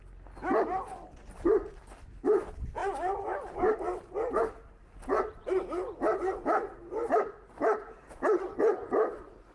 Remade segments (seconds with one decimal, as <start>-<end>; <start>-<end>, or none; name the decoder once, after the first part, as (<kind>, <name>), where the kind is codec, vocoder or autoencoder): 7.8-8.4 (vocoder, Vocos)